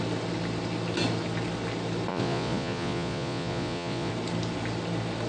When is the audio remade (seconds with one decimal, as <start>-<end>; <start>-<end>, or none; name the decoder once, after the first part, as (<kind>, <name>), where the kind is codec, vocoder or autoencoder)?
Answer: 2.1-4.1 (vocoder, Vocos)